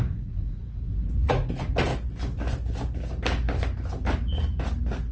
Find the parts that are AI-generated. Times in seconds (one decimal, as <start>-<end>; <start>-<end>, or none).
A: 0.0-1.9